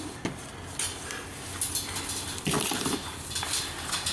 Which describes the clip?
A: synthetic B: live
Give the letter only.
B